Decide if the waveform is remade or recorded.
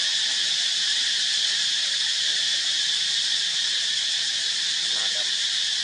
recorded